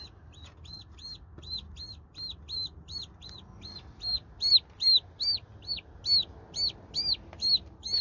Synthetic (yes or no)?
no